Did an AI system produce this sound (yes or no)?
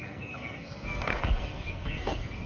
yes